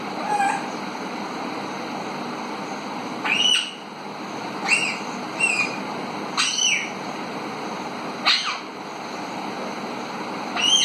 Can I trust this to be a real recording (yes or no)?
yes